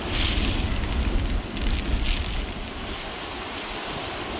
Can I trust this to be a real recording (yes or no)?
yes